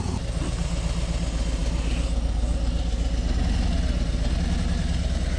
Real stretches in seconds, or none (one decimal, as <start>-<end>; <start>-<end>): 0.0-5.4